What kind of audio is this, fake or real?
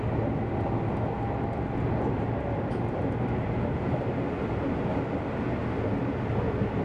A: real